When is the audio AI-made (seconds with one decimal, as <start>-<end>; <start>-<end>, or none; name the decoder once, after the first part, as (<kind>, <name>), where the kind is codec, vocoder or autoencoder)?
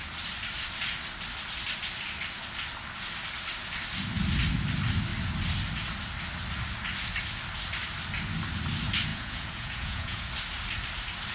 9.1-10.3 (vocoder, Vocos)